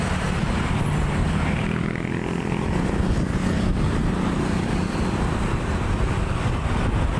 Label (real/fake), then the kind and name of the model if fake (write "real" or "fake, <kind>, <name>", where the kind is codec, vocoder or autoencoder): real